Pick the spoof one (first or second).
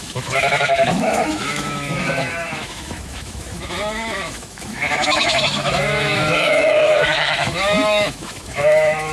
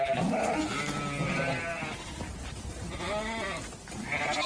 first